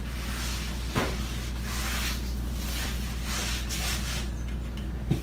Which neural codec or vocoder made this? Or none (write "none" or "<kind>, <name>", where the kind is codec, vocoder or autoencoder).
none